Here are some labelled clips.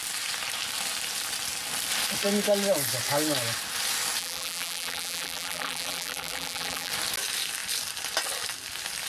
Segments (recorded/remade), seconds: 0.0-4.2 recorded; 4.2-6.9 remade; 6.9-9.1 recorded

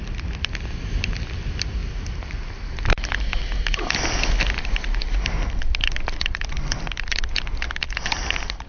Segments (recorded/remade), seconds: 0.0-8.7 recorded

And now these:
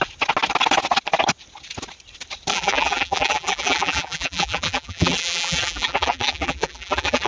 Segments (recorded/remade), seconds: 0.0-2.5 recorded; 2.5-7.3 remade

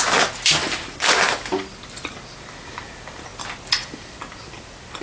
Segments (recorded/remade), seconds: 0.0-1.5 recorded; 1.5-2.9 remade; 2.9-5.0 recorded

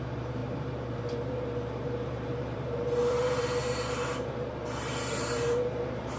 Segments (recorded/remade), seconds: 0.0-6.2 remade

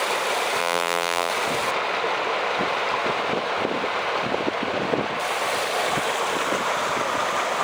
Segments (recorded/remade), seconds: 0.0-0.6 recorded; 0.6-1.3 remade; 1.3-7.6 recorded

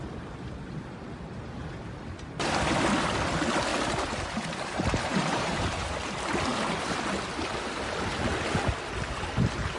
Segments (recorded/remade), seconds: 0.0-3.7 recorded; 3.7-6.1 remade; 6.1-9.8 recorded

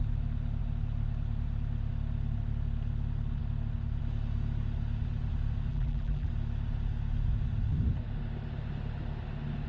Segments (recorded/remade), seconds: 0.0-5.7 recorded; 5.7-6.3 remade; 6.3-9.7 recorded